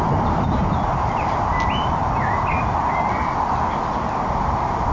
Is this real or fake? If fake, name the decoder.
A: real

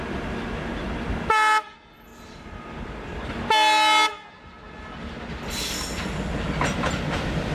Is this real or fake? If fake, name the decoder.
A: real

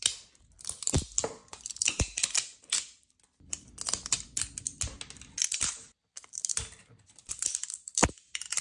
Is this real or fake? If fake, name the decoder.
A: real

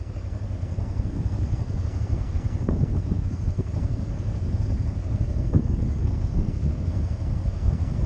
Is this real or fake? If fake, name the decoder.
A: fake, codec, SNAC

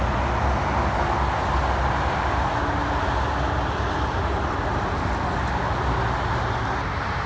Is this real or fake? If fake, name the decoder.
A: real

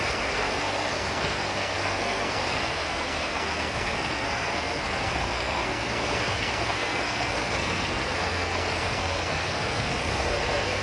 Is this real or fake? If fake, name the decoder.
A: fake, codec, SNAC